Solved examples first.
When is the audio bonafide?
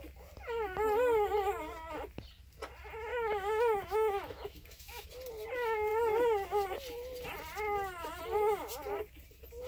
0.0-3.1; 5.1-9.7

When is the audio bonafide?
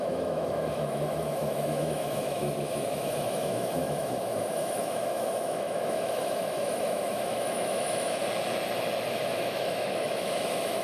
8.2-9.1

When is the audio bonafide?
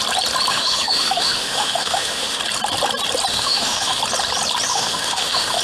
0.0-0.5; 2.4-3.3; 4.0-4.7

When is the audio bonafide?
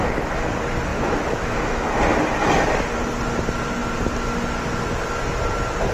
0.0-0.9; 2.0-5.9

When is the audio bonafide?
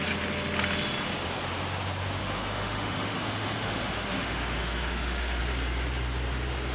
0.0-2.2; 5.4-6.7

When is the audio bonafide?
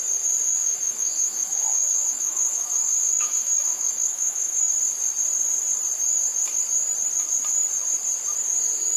0.0-0.6; 4.7-9.0